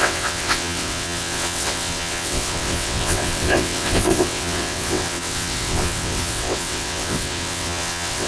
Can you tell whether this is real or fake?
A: fake